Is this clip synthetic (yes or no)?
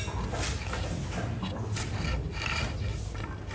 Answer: no